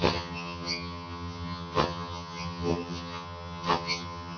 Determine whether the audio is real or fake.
fake